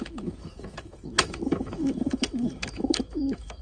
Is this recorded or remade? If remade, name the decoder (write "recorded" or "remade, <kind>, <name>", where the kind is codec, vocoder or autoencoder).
remade, autoencoder, DAC-VAE